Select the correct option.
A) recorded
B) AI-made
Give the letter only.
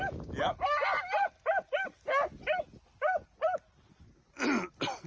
A